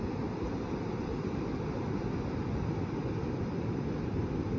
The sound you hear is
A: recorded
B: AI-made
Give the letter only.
A